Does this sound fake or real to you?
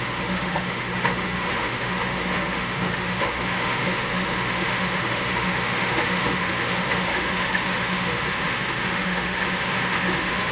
fake